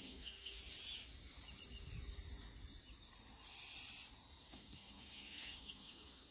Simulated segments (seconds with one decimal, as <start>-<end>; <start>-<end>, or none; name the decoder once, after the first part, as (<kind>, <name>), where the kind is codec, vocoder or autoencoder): 0.0-0.6 (codec, SNAC); 4.4-6.3